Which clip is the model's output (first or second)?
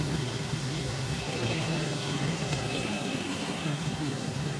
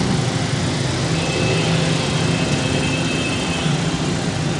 first